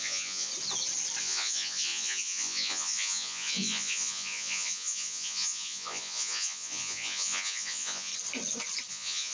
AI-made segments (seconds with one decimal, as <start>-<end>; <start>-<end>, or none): 0.0-0.5; 1.2-8.1; 8.9-9.3